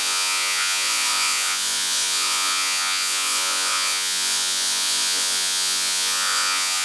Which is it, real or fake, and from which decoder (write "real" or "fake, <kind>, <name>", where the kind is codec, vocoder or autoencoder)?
fake, vocoder, Vocos